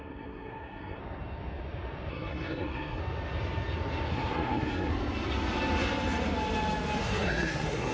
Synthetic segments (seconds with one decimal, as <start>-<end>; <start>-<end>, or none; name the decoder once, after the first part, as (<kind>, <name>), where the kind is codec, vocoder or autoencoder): 0.0-1.0 (codec, SNAC); 2.1-3.0; 4.1-4.9; 7.0-7.9